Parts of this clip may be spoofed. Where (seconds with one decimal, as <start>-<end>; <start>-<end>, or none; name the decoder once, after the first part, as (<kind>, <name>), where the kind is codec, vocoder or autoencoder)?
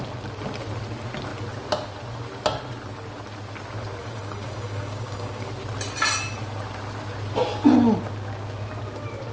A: 4.0-5.5 (codec, DAC)